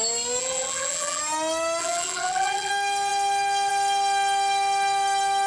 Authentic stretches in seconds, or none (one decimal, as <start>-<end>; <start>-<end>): 0.0-0.4; 1.2-1.8; 2.7-5.5